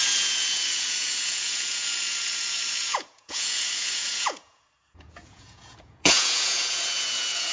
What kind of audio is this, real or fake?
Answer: fake